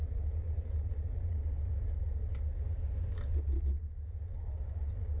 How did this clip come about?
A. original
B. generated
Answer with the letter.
A